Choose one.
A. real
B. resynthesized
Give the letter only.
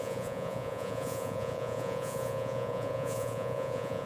B